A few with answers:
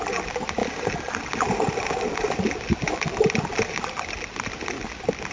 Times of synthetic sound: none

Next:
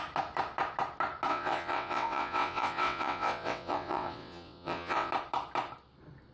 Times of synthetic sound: 1.3-5.1 (vocoder, WaveNeXt)

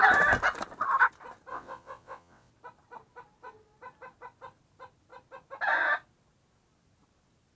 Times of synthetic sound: 1.5-2.5 (vocoder, WaveNeXt)

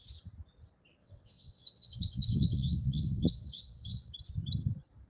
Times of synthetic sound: 1.0-4.1 (vocoder, WaveNeXt)